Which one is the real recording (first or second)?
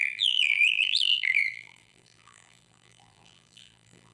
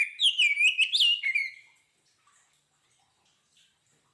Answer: second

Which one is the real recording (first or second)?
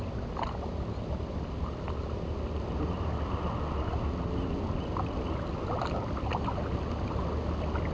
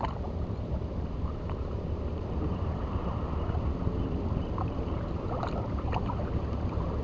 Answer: first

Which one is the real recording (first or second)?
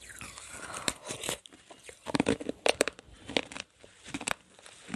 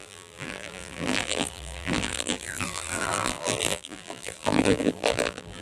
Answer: first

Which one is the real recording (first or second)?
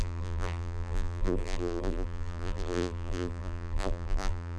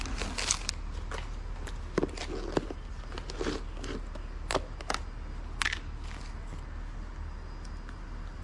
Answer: second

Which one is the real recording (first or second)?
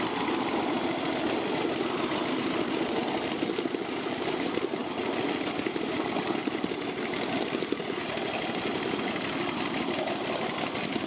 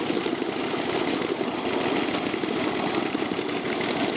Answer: second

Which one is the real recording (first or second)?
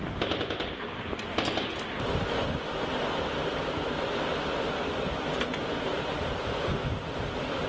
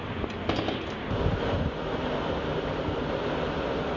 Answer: second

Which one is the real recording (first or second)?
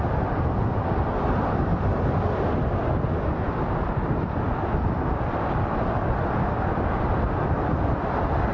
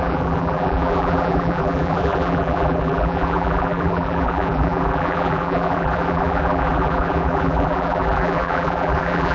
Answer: first